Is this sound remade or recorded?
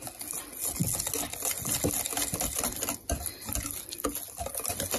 recorded